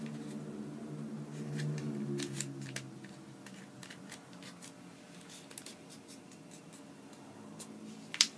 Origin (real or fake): real